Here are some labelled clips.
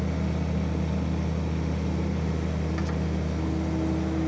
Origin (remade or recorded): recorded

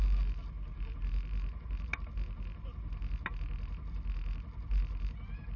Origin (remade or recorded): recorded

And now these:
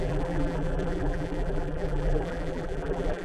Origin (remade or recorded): remade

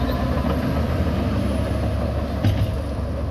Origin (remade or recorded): recorded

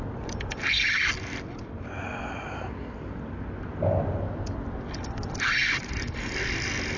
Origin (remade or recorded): recorded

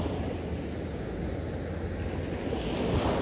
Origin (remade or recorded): recorded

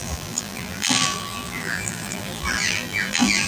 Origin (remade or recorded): remade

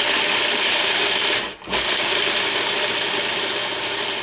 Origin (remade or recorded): recorded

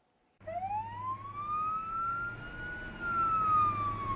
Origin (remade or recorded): recorded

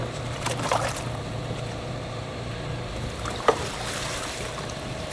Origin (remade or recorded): remade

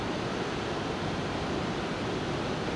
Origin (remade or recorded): recorded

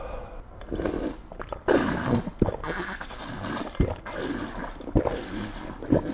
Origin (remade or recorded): recorded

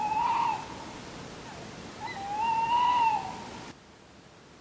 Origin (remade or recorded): recorded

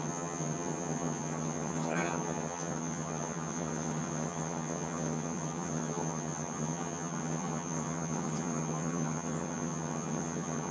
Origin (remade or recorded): remade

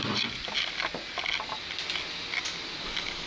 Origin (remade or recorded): recorded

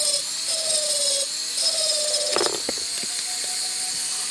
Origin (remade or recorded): recorded